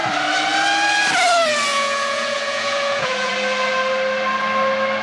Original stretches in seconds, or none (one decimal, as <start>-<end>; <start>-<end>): 0.0-1.7; 3.3-5.0